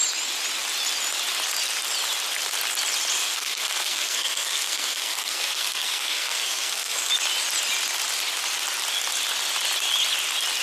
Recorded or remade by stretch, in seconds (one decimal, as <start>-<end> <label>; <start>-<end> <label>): 0.0-3.2 recorded; 3.2-7.1 remade; 7.1-10.6 recorded

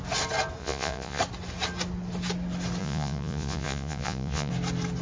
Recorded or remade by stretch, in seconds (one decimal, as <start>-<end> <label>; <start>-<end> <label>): 0.0-0.6 recorded; 0.6-1.2 remade; 1.2-2.8 recorded; 2.8-4.5 remade; 4.5-5.0 recorded

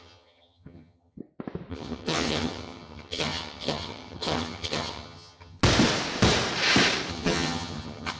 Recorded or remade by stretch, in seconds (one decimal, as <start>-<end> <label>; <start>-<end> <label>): 0.0-1.2 remade; 1.2-1.7 recorded; 1.7-5.6 remade; 5.6-7.1 recorded; 7.1-8.2 remade

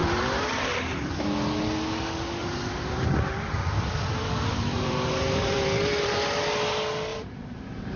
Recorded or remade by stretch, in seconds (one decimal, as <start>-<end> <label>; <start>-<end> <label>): 0.0-1.1 remade; 1.1-2.4 recorded; 2.4-6.2 remade; 6.2-7.1 recorded; 7.1-8.0 remade